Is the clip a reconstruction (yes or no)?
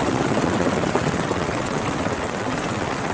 yes